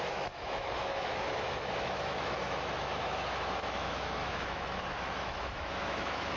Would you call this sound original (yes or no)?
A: no